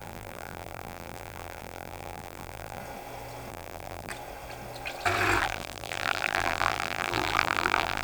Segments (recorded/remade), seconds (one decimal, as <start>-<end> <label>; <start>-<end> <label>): 0.0-2.8 remade; 2.8-3.5 recorded; 3.5-4.1 remade; 4.1-5.4 recorded; 5.4-8.0 remade